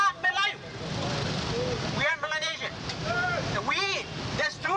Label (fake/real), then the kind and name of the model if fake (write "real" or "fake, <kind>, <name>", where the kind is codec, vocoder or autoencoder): real